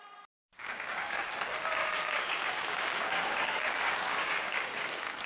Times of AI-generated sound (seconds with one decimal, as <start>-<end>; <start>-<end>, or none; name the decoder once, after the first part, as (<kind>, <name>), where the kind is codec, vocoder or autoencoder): 0.6-1.2 (codec, DAC); 1.8-5.3